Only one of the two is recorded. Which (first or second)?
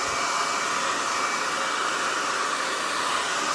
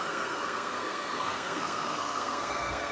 first